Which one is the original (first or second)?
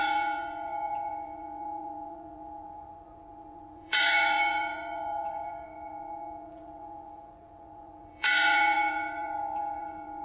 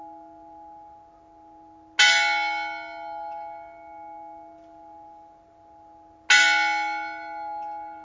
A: second